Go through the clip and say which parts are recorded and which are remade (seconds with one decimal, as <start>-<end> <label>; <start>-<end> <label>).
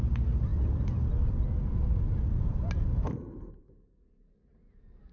0.0-5.1 recorded